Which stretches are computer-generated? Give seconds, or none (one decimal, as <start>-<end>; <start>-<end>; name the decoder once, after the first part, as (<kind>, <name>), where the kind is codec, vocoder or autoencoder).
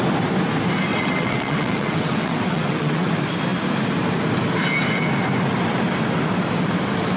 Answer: 0.9-3.1 (vocoder, WaveNeXt)